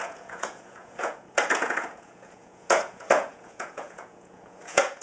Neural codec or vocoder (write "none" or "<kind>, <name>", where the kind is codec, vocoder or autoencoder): vocoder, Vocos